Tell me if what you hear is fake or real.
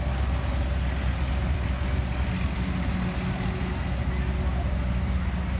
real